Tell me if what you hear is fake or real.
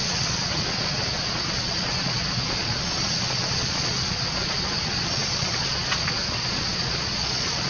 fake